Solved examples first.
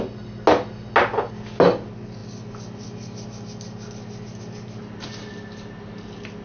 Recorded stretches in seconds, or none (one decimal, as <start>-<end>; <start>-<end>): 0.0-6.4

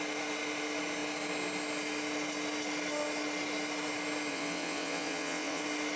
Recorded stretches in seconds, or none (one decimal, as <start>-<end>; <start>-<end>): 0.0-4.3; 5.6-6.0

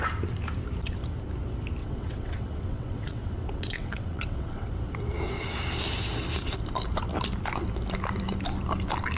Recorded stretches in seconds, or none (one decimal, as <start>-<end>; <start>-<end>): 0.0-1.8; 4.7-9.2

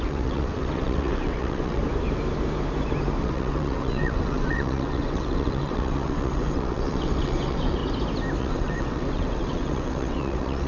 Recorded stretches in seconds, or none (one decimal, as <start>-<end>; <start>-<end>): 1.8-3.2; 7.8-8.4

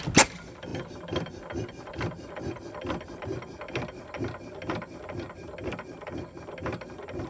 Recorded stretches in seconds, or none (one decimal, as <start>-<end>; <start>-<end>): 0.0-7.3

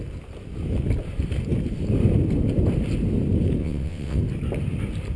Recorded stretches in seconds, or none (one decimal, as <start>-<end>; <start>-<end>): 0.0-3.6; 4.2-5.2

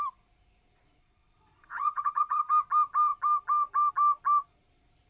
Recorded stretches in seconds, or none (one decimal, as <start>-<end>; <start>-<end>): 0.0-1.0; 2.5-5.1

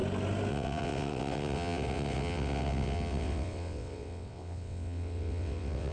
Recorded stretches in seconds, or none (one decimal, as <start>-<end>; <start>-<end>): 0.0-0.5